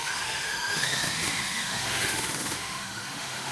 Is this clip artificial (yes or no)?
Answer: yes